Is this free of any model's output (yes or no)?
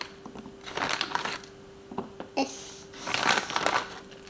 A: yes